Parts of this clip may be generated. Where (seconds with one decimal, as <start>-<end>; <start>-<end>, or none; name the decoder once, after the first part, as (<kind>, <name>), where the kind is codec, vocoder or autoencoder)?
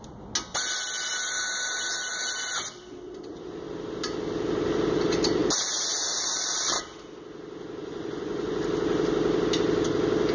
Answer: 7.8-8.6 (vocoder, Vocos)